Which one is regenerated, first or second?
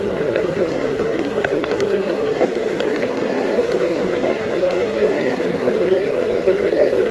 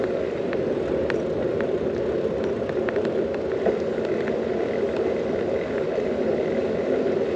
first